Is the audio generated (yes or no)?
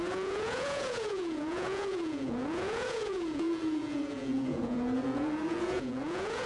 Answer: yes